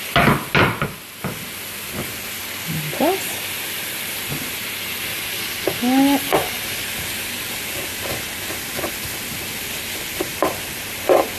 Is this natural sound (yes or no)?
yes